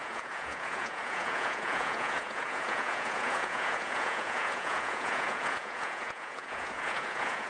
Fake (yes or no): yes